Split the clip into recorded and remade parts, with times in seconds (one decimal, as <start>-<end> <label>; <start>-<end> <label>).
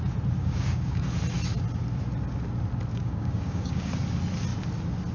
0.0-0.4 recorded; 0.4-1.0 remade; 1.0-2.9 recorded; 2.9-3.9 remade; 3.9-5.1 recorded